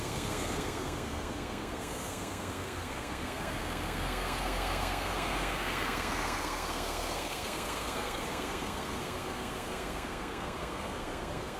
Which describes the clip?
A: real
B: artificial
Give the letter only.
B